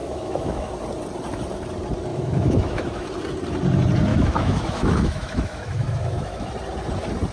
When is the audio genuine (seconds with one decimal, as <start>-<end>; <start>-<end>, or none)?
0.7-2.1; 3.1-4.1; 6.5-7.3